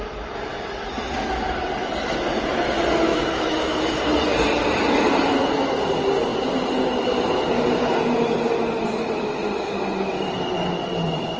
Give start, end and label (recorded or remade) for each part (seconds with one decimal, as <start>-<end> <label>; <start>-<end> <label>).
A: 0.0-3.1 recorded; 3.1-4.0 remade; 4.0-11.4 recorded